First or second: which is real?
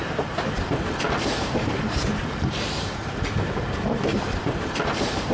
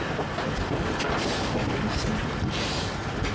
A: second